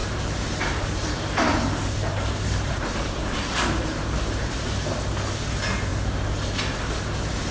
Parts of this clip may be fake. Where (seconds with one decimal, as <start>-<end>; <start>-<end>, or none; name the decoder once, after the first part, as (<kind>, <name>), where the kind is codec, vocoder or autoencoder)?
0.0-4.5 (vocoder, BigVGAN v2)